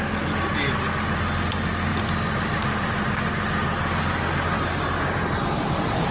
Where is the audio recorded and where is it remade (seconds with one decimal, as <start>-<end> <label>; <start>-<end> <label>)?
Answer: 0.0-6.1 recorded